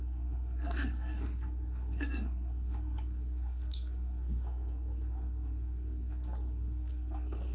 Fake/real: fake